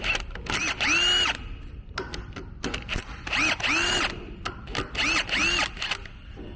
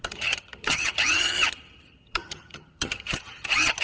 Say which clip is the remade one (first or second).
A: second